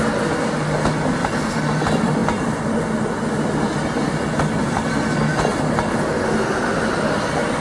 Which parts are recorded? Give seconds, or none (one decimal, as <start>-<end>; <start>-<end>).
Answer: 0.0-7.6